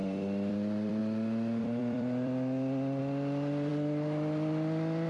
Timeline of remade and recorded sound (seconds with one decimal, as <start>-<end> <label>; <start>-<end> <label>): 0.0-1.0 remade; 1.0-1.6 recorded; 1.6-5.1 remade